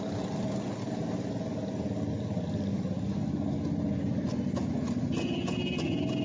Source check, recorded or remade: recorded